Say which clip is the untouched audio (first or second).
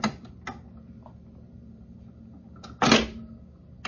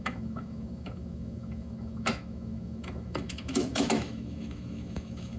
first